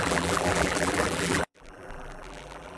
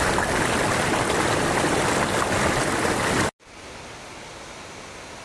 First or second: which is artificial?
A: first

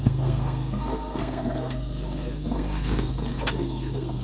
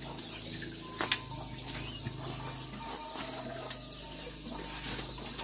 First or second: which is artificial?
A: first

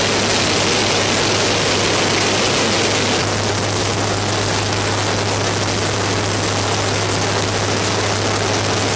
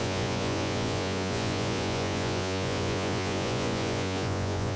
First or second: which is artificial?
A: second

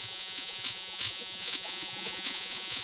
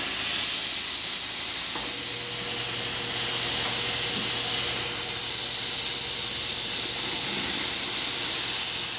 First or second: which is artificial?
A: first